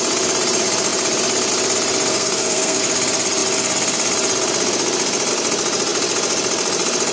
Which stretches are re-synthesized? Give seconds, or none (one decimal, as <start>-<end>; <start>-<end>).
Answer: 2.1-2.8